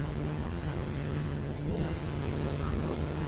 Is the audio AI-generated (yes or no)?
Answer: yes